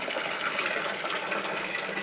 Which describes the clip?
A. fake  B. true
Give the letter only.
B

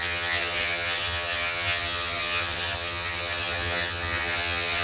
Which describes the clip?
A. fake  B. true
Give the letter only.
A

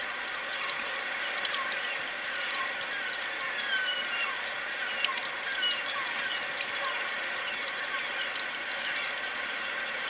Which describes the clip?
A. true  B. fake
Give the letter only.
A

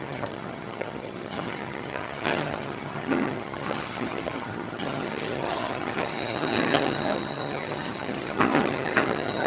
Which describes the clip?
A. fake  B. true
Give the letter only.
A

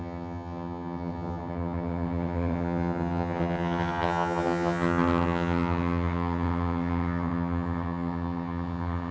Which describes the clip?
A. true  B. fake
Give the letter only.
B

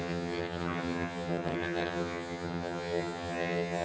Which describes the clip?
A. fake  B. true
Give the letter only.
A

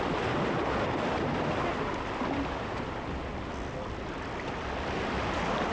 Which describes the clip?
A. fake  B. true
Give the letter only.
B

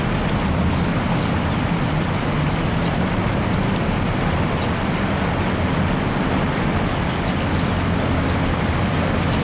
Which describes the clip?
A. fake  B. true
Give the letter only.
B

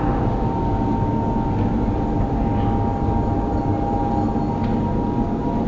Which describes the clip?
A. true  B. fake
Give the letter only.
A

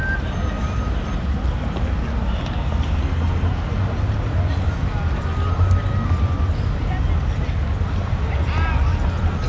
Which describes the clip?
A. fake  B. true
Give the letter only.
B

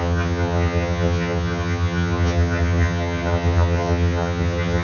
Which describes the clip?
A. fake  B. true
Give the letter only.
A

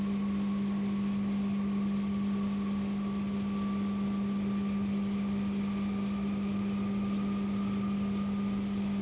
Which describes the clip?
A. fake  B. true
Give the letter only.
B